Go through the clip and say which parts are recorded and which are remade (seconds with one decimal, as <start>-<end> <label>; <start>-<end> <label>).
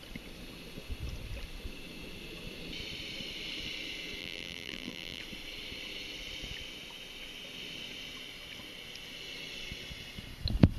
0.0-4.2 recorded; 4.2-5.2 remade; 5.2-10.8 recorded